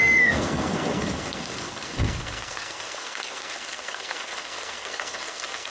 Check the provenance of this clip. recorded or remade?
remade